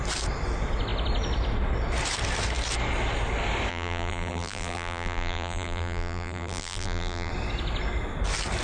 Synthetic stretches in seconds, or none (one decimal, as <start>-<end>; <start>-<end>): 3.7-7.3